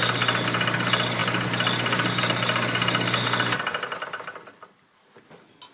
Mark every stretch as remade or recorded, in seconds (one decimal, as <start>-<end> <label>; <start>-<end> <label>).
0.0-5.7 recorded